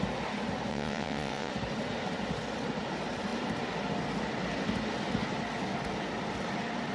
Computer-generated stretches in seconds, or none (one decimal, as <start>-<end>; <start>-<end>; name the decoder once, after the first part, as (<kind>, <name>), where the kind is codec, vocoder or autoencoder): 0.7-1.5 (vocoder, WaveNeXt)